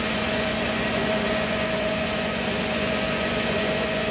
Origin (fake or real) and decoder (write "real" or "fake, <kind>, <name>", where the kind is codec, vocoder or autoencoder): fake, vocoder, Vocos